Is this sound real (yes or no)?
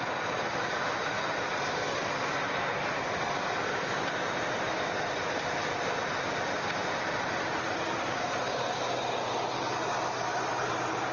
yes